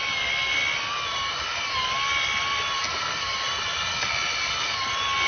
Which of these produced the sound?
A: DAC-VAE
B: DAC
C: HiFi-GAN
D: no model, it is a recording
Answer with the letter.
D